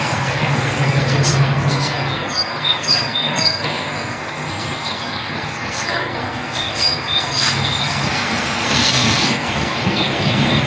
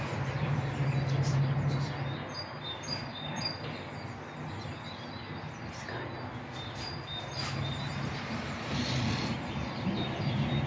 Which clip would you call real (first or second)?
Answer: second